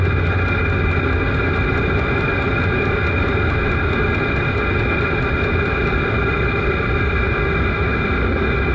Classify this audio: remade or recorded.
recorded